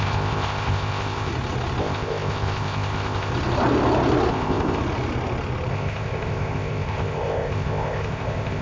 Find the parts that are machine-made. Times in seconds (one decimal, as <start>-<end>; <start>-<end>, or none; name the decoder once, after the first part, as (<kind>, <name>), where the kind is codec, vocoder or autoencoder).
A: 0.0-1.3 (codec, ZipCodec); 1.8-3.3; 4.3-4.8; 5.7-8.6